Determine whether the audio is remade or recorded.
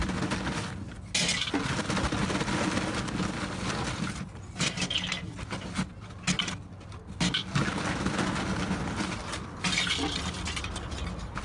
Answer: recorded